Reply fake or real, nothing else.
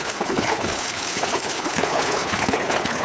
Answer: fake